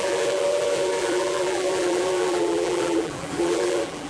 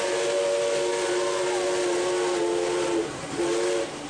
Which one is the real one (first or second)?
second